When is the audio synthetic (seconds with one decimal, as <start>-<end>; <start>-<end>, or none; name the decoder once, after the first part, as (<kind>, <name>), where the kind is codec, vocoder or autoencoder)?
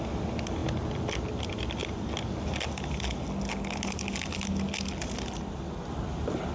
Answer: none